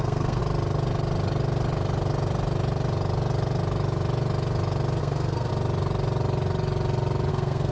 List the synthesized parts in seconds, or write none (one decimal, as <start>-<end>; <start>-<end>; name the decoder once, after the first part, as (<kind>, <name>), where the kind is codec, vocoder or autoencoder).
0.0-0.4 (codec, SNAC); 5.0-5.5; 7.3-7.7